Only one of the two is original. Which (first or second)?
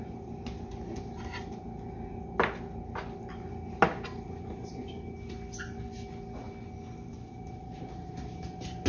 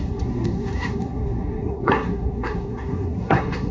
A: first